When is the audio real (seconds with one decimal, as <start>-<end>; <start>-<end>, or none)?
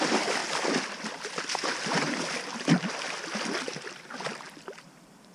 0.4-3.6